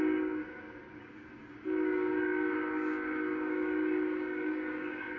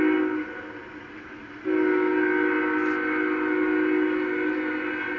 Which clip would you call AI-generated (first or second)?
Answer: first